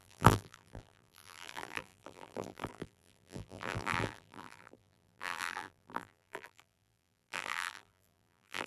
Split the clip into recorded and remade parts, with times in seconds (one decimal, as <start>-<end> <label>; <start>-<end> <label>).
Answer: 0.0-8.7 remade